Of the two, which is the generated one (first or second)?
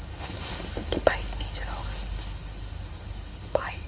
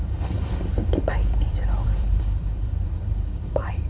second